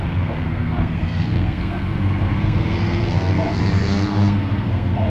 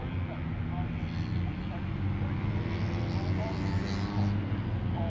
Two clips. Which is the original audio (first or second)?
second